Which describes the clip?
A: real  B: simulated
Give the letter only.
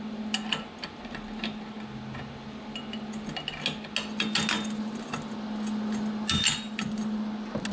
A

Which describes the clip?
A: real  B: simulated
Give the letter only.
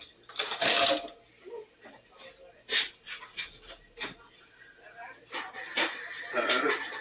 A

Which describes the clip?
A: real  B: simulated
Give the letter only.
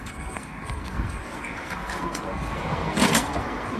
B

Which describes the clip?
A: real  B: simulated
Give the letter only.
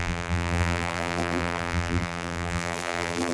B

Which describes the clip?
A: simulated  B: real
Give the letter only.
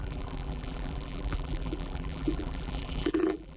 A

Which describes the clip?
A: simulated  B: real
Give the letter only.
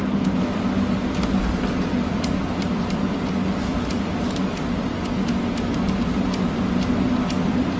A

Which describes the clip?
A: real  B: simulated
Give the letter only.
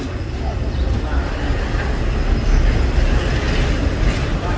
A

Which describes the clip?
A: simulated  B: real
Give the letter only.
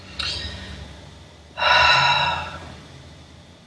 B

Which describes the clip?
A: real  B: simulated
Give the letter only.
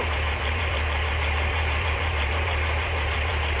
B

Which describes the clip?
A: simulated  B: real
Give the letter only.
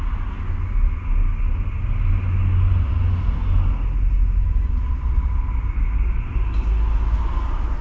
B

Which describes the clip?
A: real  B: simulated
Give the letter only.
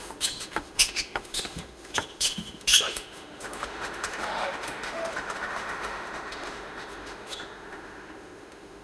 B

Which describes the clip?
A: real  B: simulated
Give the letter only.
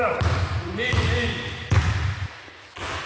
B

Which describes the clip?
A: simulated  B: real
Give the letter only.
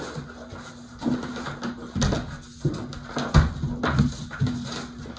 B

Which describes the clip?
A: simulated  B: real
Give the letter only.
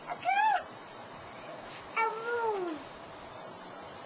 A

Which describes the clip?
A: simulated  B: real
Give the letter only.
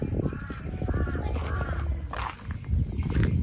B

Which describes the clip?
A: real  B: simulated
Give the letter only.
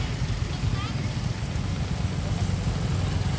A